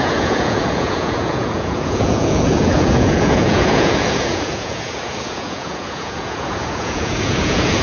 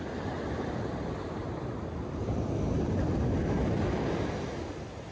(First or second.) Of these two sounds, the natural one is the second